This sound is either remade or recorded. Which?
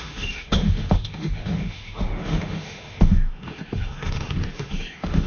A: remade